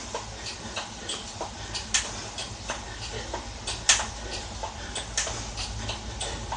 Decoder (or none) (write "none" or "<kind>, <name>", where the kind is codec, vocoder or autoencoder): none